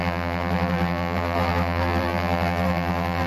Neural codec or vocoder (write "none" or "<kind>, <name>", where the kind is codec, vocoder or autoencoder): vocoder, BigVGAN v2